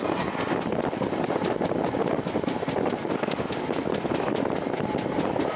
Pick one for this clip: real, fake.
real